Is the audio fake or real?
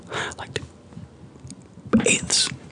real